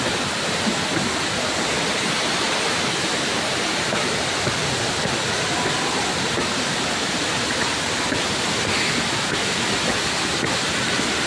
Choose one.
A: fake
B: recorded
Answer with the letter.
B